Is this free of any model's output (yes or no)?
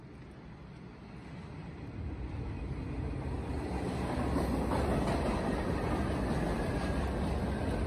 yes